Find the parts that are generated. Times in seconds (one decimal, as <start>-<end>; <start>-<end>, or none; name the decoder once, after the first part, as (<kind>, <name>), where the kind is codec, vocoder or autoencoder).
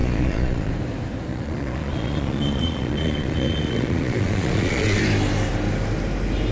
0.0-0.7 (vocoder, Vocos); 1.3-5.0